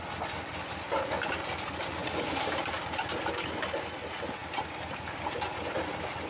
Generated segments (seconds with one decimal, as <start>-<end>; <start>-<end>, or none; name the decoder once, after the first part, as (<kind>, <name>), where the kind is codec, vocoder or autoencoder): none